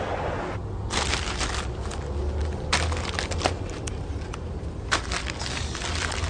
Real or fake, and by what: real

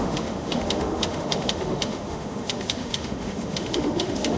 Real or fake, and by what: fake, autoencoder, DAC-VAE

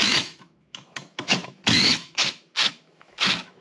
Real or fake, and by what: fake, autoencoder, DAC-VAE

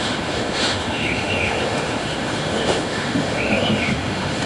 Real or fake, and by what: fake, autoencoder, DAC-VAE